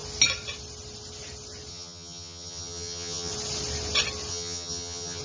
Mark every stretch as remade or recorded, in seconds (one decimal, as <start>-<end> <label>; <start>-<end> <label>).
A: 0.0-1.7 recorded; 1.7-3.3 remade; 3.3-4.3 recorded; 4.3-5.2 remade